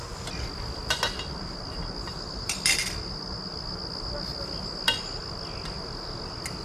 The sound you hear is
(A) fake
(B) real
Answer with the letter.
B